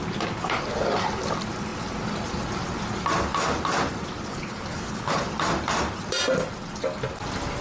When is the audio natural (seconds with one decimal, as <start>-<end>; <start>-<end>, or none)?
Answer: 0.0-4.3; 5.3-7.6